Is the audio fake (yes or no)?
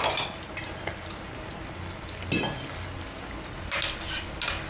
no